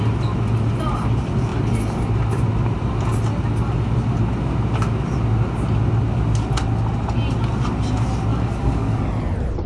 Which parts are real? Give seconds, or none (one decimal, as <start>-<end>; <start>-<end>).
0.0-8.3; 9.0-9.7